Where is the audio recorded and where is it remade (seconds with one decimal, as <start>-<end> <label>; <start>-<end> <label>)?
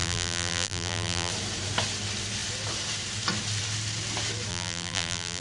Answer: 0.0-1.3 remade; 1.3-4.5 recorded; 4.5-5.4 remade